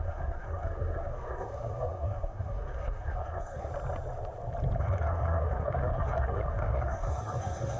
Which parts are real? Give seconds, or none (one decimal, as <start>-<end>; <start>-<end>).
3.7-4.8